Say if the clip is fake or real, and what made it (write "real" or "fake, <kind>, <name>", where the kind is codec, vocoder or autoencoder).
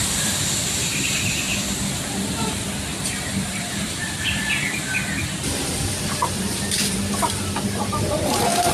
fake, vocoder, BigVGAN v2